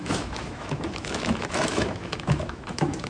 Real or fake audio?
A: fake